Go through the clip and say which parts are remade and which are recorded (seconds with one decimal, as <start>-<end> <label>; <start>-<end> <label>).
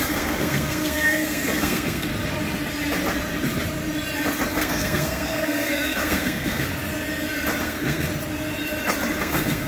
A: 0.0-2.1 remade; 2.1-4.5 recorded; 4.5-6.7 remade; 6.7-7.6 recorded; 7.6-8.1 remade; 8.1-9.2 recorded; 9.2-9.7 remade